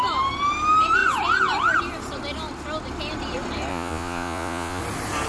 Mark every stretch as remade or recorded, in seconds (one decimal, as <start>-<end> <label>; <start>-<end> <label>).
0.0-3.7 recorded; 3.7-4.8 remade; 4.8-5.3 recorded